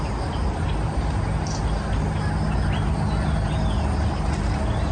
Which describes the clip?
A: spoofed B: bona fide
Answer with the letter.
B